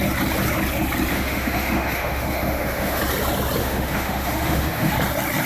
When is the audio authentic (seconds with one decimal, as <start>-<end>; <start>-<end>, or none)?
0.0-1.1; 3.0-3.6; 4.9-5.5